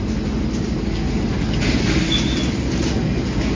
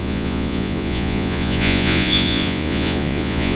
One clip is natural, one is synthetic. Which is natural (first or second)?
first